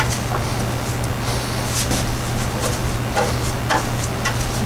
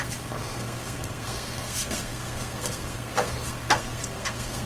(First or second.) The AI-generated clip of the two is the second